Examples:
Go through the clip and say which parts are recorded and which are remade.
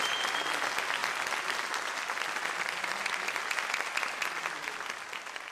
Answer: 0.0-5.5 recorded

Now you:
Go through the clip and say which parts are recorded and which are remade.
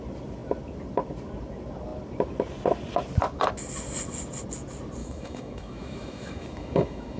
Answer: 0.0-5.0 recorded; 5.0-7.2 remade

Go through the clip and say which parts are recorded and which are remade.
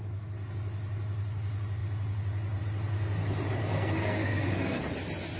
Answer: 0.0-3.6 recorded; 3.6-4.8 remade; 4.8-5.4 recorded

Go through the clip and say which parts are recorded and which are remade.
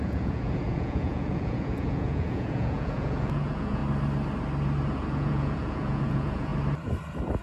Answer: 0.0-3.8 remade; 3.8-5.1 recorded; 5.1-6.5 remade; 6.5-7.4 recorded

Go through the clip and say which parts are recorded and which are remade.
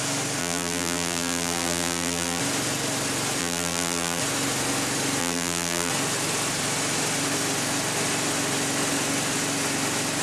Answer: 0.0-0.4 recorded; 0.4-2.4 remade; 2.4-3.4 recorded; 3.4-4.2 remade; 4.2-5.2 recorded; 5.2-5.9 remade; 5.9-10.2 recorded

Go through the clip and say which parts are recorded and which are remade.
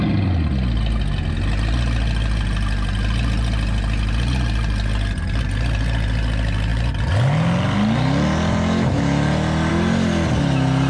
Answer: 0.0-10.9 recorded